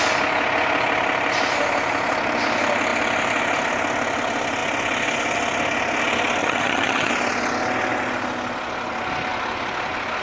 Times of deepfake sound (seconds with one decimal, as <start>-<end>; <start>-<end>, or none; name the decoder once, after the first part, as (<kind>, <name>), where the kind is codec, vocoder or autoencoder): 6.4-7.1 (vocoder, HiFi-GAN)